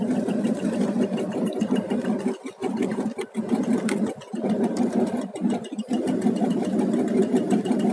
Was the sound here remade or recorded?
recorded